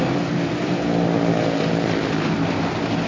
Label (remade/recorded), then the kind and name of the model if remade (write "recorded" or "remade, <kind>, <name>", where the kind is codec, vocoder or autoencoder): recorded